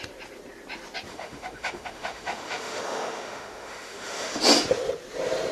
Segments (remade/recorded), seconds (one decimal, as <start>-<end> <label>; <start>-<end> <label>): 0.0-1.1 recorded; 1.1-4.4 remade; 4.4-5.5 recorded